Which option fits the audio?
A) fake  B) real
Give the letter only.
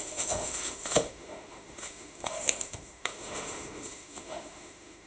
A